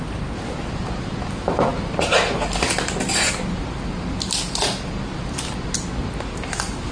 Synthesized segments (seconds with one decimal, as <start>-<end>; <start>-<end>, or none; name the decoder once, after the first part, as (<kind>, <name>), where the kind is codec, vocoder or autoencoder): none